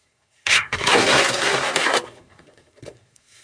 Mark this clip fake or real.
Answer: fake